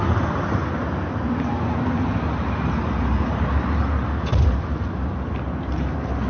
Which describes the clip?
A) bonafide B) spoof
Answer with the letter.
A